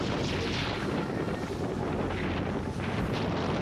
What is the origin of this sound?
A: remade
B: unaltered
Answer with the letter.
B